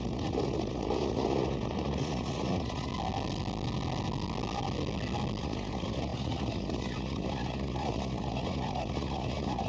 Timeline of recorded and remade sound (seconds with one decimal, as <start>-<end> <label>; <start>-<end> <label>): 0.0-2.9 remade; 2.9-5.4 recorded; 5.4-9.7 remade